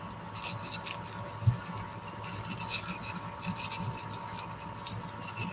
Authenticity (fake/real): real